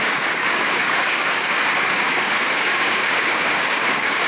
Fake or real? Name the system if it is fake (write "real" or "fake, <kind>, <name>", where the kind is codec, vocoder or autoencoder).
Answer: fake, codec, DAC